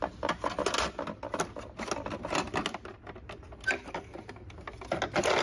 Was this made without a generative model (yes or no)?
yes